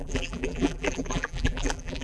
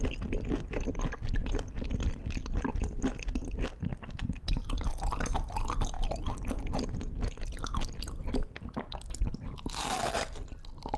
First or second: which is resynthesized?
first